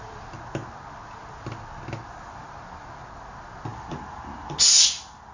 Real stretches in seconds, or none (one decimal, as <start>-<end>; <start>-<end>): 0.0-5.3